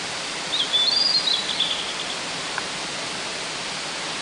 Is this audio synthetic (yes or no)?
no